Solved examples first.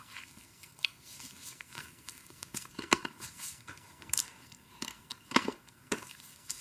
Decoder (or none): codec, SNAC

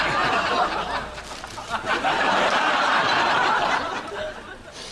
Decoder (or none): none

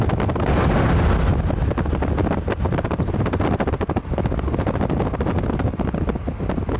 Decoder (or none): none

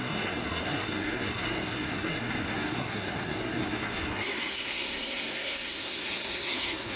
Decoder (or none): codec, SNAC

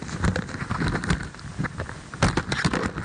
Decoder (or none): none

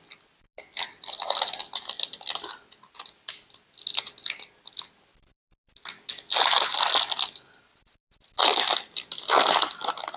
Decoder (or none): none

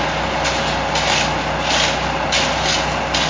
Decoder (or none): none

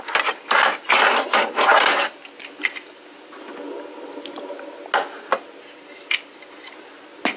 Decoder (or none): none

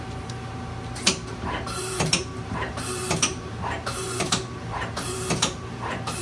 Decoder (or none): vocoder, BigVGAN v2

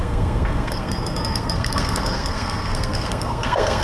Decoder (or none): codec, SNAC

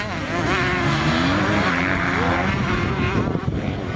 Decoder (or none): vocoder, BigVGAN v2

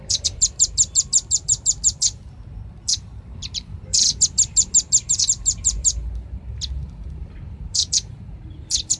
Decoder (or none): vocoder, BigVGAN v2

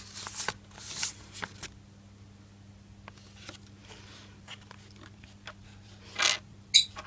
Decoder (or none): none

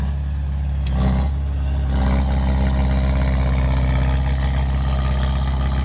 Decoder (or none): none